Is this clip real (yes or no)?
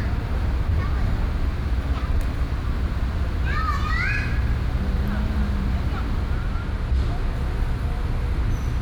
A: yes